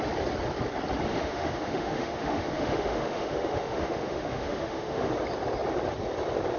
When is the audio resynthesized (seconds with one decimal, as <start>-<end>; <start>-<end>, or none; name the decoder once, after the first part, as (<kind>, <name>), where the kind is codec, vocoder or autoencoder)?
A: 1.1-5.1 (autoencoder, DAC-VAE)